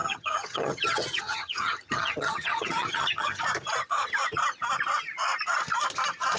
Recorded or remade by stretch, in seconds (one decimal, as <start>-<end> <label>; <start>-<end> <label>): 0.0-3.4 remade; 3.4-6.4 recorded